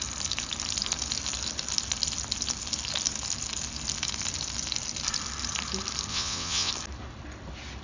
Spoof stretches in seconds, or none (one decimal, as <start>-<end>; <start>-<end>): 6.1-6.7